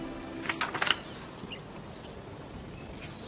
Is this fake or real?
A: real